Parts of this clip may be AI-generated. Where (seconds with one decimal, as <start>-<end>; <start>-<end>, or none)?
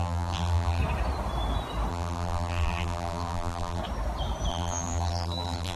0.0-0.8; 1.9-3.8; 4.5-5.8